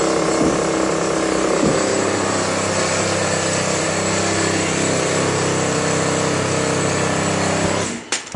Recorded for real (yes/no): yes